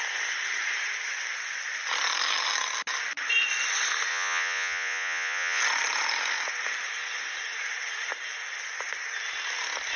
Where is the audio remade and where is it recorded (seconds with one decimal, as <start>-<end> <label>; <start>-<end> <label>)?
0.0-4.1 recorded; 4.1-5.6 remade; 5.6-10.0 recorded